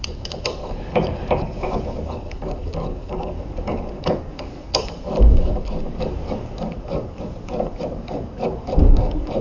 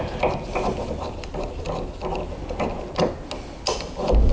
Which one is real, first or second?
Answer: second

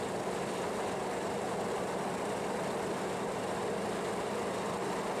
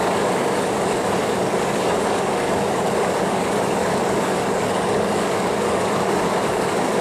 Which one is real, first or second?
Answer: first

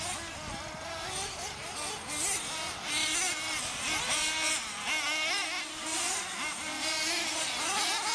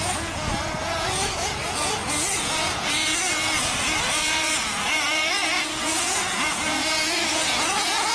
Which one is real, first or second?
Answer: first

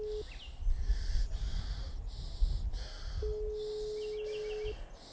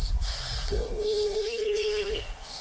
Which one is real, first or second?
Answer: first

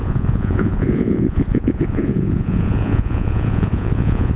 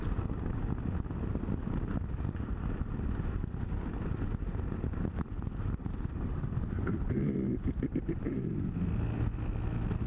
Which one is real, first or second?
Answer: second